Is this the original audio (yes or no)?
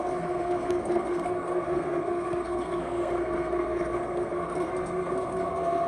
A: no